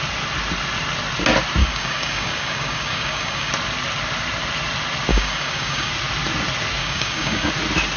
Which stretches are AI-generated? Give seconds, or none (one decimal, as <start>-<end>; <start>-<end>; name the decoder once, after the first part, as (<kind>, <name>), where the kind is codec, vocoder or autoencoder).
1.6-3.5 (codec, DAC); 5.1-5.9; 6.8-7.5